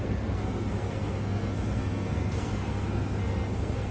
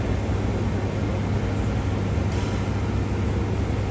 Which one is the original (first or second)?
second